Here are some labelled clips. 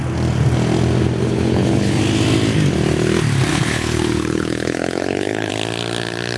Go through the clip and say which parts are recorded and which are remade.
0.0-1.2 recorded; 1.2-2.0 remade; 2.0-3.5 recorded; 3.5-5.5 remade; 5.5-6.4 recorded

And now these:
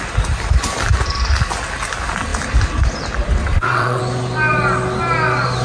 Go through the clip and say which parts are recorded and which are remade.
0.0-3.4 recorded; 3.4-4.0 remade; 4.0-5.6 recorded

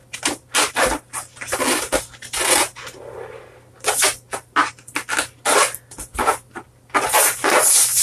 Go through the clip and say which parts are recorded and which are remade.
0.0-8.0 recorded

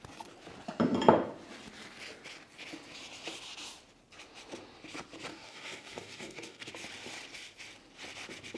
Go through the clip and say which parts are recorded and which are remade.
0.0-5.3 recorded; 5.3-6.7 remade; 6.7-8.6 recorded